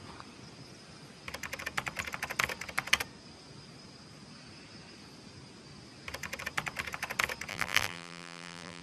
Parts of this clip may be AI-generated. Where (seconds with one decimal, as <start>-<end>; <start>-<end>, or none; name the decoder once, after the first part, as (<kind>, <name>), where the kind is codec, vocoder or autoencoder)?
7.5-8.8 (vocoder, BigVGAN v2)

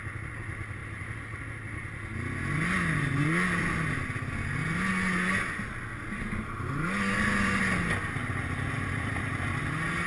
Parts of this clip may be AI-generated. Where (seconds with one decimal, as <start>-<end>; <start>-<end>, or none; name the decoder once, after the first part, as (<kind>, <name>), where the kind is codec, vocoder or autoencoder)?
0.8-1.4 (vocoder, BigVGAN v2)

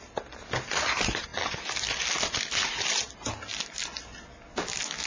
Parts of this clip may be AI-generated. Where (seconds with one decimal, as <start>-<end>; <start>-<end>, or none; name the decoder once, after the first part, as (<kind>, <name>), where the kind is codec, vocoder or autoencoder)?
none